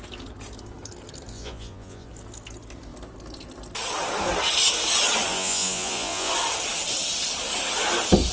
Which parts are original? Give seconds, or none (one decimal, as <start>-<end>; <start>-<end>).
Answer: 0.0-1.3; 2.1-5.3; 6.3-8.3

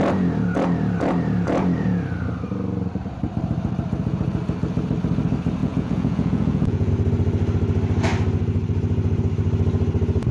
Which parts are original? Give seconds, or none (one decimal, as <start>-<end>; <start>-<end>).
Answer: 0.0-5.6; 6.9-10.3

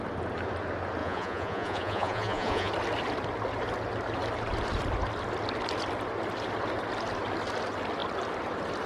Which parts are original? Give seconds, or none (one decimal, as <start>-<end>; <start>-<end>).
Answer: 0.0-1.0; 2.7-8.9

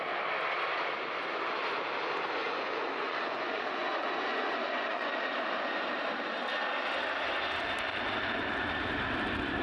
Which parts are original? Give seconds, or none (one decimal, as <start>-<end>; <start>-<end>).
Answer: 0.0-2.4; 5.1-7.9; 8.9-9.6